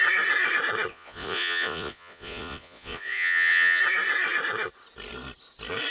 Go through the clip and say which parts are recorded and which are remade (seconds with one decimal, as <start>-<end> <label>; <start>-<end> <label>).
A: 0.0-0.9 recorded; 0.9-3.8 remade; 3.8-5.9 recorded